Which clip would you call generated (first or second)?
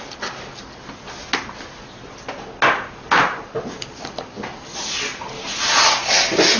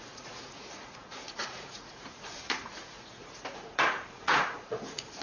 second